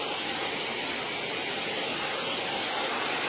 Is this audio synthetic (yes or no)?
no